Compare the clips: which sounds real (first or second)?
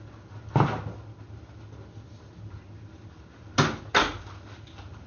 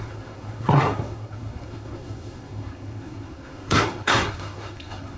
first